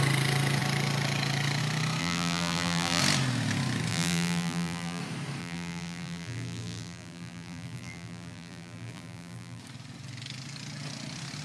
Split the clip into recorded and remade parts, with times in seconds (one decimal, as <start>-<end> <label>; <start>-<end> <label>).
0.0-2.0 recorded; 2.0-3.0 remade; 3.0-3.9 recorded; 3.9-5.0 remade; 5.0-5.4 recorded; 5.4-9.6 remade; 9.6-11.4 recorded